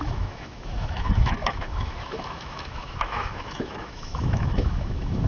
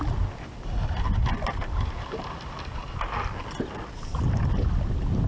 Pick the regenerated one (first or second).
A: first